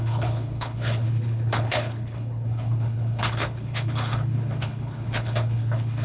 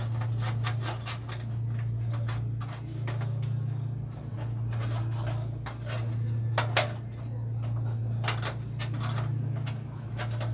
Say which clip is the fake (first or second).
first